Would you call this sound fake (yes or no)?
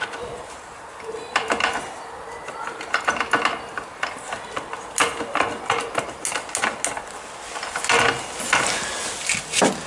no